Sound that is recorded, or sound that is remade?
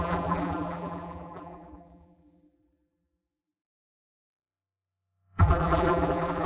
remade